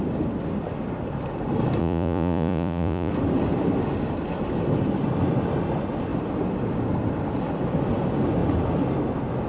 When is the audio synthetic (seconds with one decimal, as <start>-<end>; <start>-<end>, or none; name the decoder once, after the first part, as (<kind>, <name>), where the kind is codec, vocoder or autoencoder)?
1.8-3.1 (vocoder, Vocos)